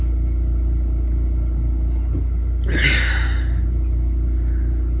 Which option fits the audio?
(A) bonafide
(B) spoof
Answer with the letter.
A